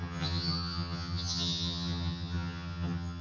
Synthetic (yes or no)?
yes